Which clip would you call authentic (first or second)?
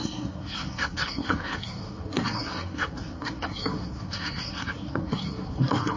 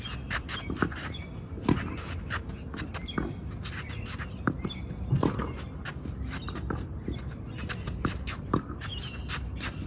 second